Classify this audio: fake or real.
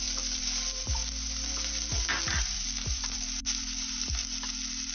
fake